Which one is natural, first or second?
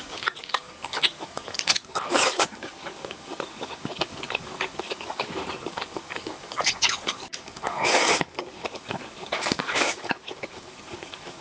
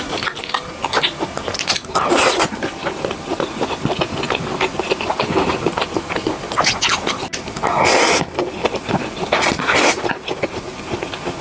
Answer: second